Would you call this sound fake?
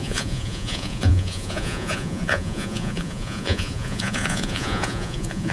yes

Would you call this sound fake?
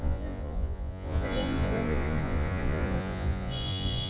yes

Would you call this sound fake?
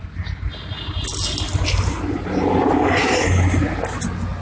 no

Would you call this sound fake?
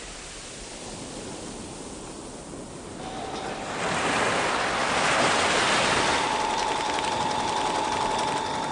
no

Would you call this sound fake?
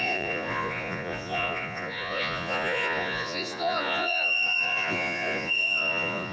yes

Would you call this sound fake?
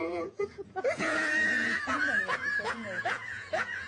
yes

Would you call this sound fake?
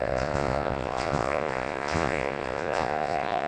yes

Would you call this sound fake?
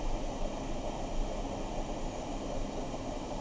no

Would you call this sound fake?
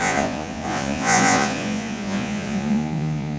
yes